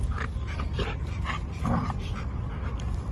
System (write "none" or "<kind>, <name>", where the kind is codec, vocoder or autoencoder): none